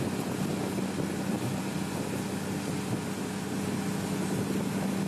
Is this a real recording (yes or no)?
yes